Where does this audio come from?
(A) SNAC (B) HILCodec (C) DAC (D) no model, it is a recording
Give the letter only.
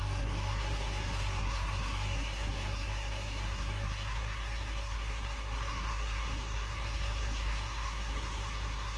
A